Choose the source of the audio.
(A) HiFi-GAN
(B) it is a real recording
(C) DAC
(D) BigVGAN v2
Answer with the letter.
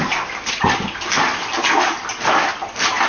B